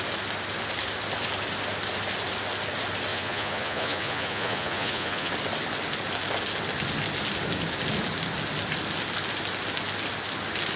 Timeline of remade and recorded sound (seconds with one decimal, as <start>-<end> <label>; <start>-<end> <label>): 0.0-3.1 recorded; 3.1-5.3 remade; 5.3-10.8 recorded